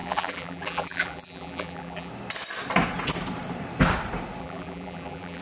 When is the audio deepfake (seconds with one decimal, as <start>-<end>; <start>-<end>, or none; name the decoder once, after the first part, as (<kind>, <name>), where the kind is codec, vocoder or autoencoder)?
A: 0.0-2.1 (vocoder, BigVGAN v2); 4.4-5.4

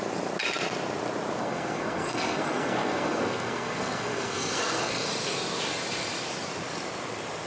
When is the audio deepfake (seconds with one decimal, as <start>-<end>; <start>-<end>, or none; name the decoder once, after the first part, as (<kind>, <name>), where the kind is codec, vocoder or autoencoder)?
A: 1.4-5.1 (codec, SNAC)